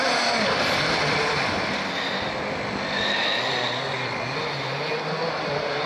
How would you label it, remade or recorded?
recorded